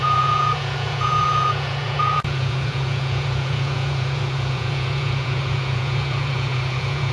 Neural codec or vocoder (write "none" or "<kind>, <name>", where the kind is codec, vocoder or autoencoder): vocoder, Vocos